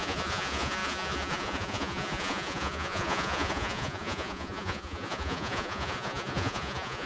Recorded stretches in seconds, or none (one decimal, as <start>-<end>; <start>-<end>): none